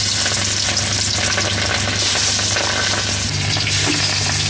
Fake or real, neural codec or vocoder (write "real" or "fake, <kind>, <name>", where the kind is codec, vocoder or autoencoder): real